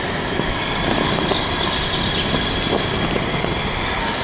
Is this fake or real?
real